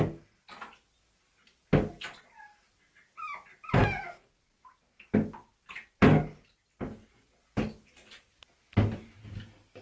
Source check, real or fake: real